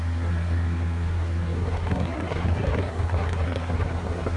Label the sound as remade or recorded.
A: remade